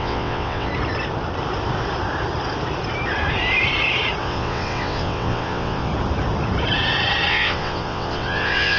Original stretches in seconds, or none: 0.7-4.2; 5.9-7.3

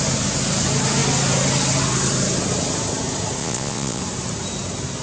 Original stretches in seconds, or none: 0.0-3.4; 4.0-5.0

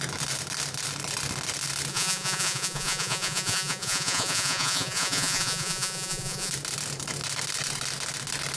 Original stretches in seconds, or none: 0.0-1.9; 6.5-8.6

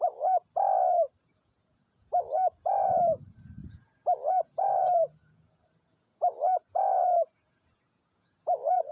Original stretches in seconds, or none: 0.4-1.2

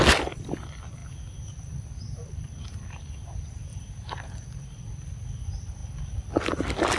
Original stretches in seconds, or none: 0.0-3.7; 4.7-7.0

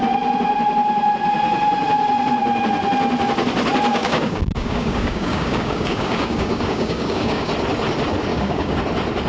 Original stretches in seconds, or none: 0.0-3.9; 7.5-8.3; 8.8-9.3